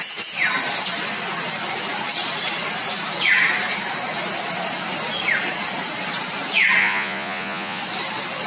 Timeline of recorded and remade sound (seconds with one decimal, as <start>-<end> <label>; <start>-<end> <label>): 0.0-6.8 recorded; 6.8-7.8 remade; 7.8-8.5 recorded